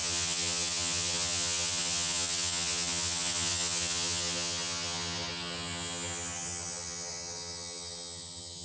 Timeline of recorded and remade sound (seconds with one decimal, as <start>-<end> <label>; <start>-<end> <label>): 0.0-8.6 remade